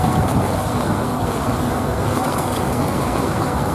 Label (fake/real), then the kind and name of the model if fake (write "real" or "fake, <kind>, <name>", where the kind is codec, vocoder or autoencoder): fake, codec, SNAC